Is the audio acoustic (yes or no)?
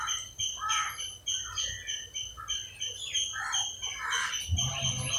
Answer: yes